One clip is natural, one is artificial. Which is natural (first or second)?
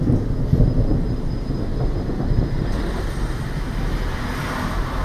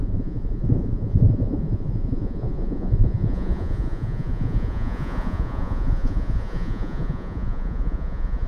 first